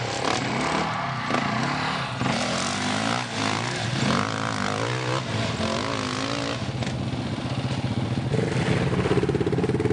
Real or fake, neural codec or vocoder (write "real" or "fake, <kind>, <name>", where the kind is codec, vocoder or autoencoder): real